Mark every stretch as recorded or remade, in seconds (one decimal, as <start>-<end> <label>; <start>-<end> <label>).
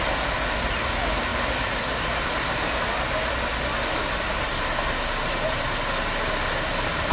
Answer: 0.0-7.1 recorded